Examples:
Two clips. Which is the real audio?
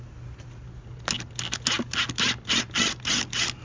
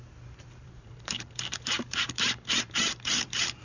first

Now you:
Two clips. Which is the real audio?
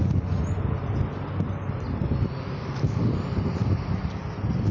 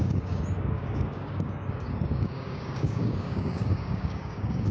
first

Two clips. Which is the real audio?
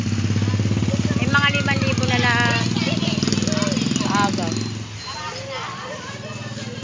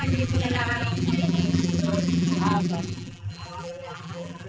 first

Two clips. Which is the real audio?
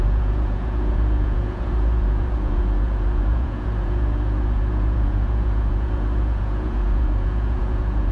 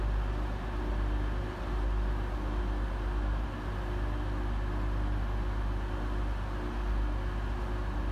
second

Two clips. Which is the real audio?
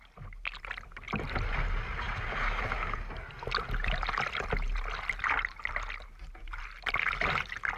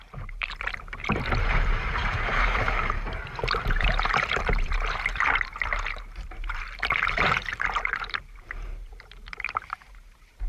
first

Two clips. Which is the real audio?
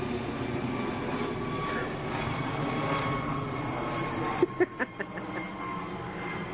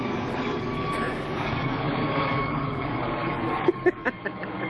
first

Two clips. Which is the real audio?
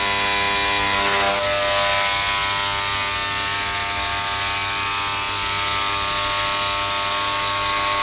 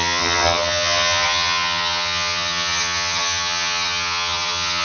first